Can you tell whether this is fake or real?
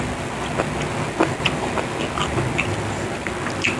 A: real